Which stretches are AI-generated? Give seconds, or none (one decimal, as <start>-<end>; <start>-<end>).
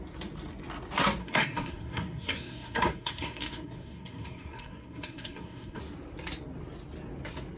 1.2-5.8